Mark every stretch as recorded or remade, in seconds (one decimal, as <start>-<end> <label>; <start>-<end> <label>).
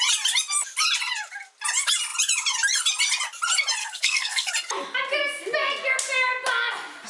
0.0-3.8 recorded; 3.8-4.5 remade; 4.5-7.1 recorded